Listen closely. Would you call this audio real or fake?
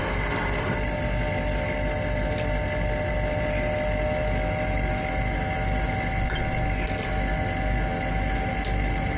real